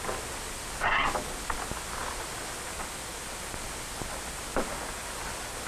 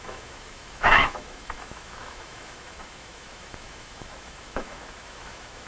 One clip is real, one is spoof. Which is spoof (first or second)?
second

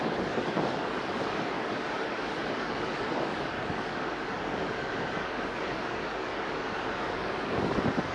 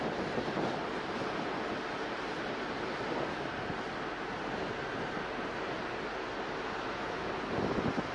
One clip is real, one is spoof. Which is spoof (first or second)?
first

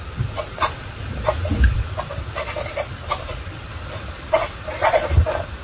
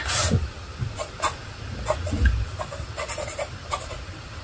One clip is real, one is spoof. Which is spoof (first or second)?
first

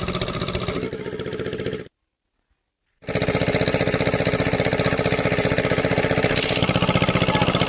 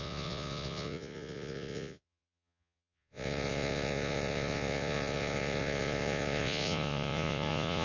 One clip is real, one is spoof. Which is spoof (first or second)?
second